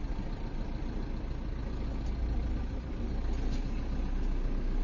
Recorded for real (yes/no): yes